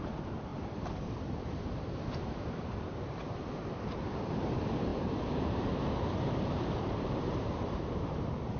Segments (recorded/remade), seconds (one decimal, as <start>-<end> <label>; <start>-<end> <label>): 0.0-8.6 remade